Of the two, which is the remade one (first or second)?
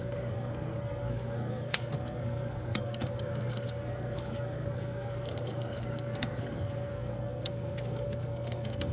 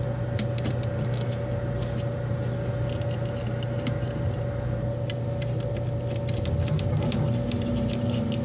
first